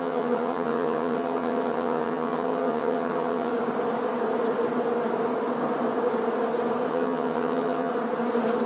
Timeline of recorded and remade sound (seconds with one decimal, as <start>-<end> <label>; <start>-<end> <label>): 0.0-3.5 remade; 3.5-6.9 recorded; 6.9-7.9 remade; 7.9-8.7 recorded